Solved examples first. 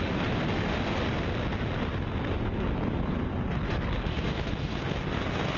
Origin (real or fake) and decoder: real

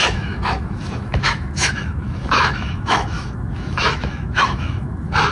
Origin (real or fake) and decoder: fake, autoencoder, DAC-VAE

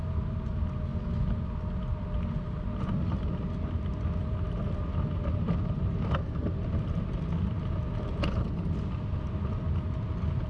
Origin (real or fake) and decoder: real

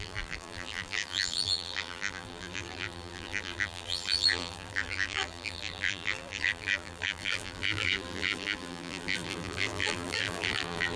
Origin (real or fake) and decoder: fake, vocoder, BigVGAN v2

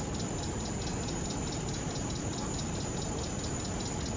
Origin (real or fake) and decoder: real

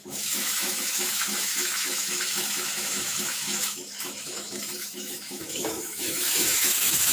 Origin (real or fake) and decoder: fake, autoencoder, DAC-VAE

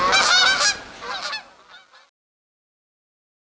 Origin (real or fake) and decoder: real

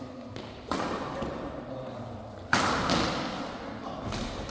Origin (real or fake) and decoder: real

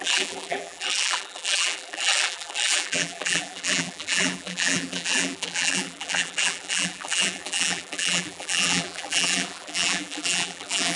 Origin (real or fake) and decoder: fake, vocoder, BigVGAN v2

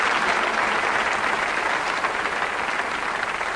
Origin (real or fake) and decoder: real